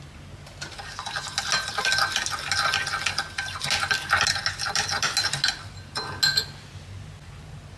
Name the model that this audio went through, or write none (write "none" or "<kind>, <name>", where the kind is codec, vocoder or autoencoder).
none